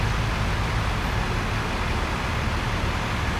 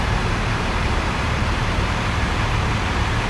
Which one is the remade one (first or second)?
second